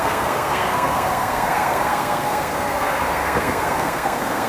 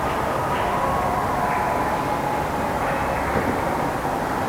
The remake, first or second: first